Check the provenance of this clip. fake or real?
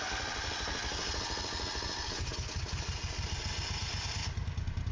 real